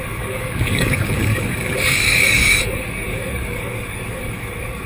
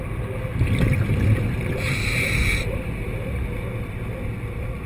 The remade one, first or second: first